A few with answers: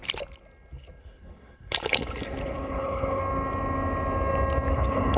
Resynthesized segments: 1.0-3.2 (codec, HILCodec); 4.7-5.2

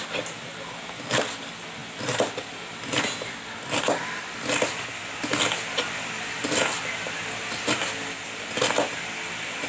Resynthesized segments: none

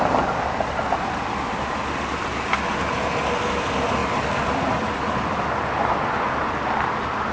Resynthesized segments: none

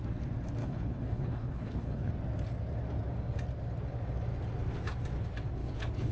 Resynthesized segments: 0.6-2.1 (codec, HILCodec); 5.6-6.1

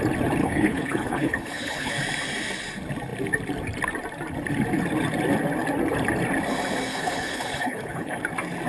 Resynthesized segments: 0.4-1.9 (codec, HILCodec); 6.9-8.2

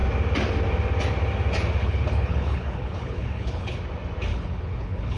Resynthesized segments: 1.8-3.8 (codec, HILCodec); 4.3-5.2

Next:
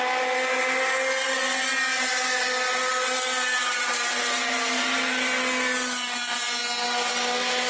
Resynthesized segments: none